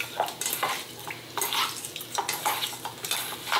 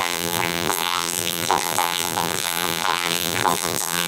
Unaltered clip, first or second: first